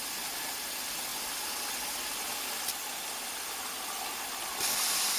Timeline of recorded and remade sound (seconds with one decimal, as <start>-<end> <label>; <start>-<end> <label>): 0.0-5.2 recorded